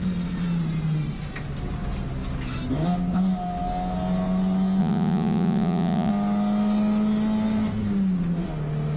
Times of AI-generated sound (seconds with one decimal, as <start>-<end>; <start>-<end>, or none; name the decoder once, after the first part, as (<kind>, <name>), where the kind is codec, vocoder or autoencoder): 4.8-6.1 (vocoder, Vocos)